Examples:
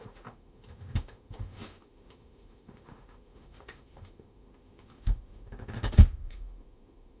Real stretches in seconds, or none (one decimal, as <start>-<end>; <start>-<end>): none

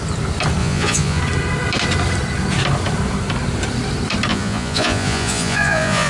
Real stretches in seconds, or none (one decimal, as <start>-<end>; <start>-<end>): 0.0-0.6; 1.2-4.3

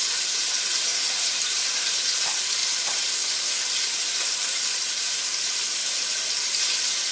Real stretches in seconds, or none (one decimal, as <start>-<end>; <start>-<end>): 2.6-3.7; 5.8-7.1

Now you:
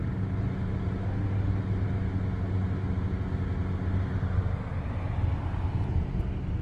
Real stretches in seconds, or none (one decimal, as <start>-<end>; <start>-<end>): 0.0-1.0; 1.5-6.6

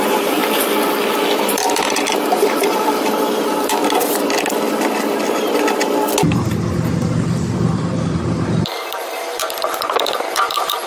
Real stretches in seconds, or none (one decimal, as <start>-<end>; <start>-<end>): 0.4-1.4; 3.8-7.8

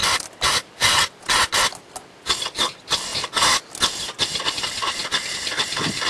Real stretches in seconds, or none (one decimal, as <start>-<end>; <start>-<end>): 0.0-5.0